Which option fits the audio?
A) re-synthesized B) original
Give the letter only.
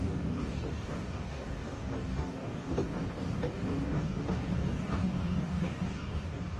A